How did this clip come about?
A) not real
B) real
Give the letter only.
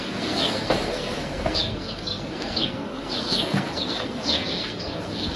A